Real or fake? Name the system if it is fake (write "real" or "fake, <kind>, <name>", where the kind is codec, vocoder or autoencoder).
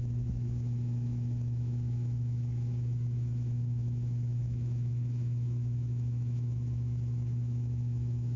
fake, autoencoder, DAC-VAE